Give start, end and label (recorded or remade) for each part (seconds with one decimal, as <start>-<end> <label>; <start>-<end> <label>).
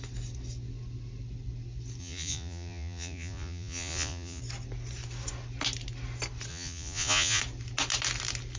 0.0-2.0 recorded; 2.0-4.4 remade; 4.4-6.5 recorded; 6.5-7.4 remade; 7.4-8.6 recorded